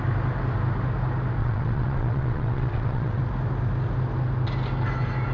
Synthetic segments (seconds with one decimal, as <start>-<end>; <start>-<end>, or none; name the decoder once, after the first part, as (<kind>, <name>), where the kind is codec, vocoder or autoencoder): 1.4-3.2 (vocoder, WaveNeXt)